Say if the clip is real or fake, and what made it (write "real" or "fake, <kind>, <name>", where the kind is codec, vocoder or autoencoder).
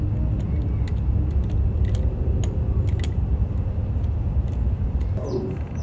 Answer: real